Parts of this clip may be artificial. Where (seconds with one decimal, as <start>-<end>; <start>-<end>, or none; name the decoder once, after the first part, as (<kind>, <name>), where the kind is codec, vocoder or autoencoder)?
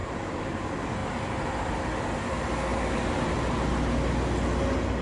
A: 0.0-0.6 (vocoder, BigVGAN v2)